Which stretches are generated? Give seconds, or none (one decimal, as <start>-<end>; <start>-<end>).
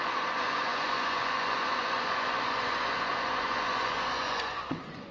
0.0-5.1